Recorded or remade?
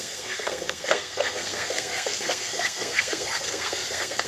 remade